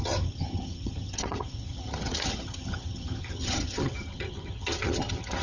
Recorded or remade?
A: remade